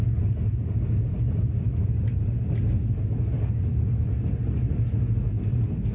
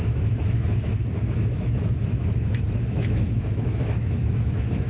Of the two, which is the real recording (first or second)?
first